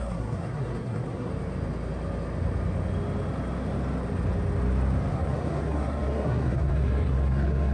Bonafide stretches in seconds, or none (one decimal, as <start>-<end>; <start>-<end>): 1.3-5.1